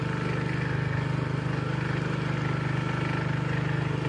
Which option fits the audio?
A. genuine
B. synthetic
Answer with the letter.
A